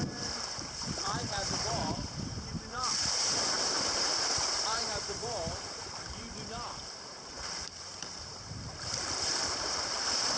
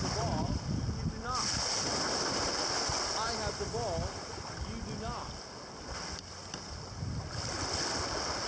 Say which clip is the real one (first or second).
second